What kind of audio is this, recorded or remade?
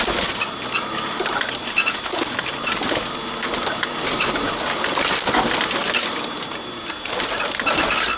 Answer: recorded